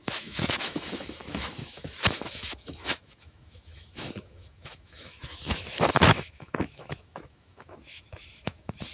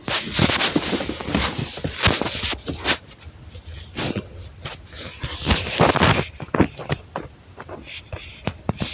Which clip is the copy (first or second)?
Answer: first